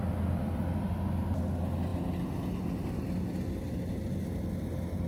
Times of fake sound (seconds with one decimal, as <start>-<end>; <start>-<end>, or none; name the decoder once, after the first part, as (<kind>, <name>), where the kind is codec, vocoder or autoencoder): none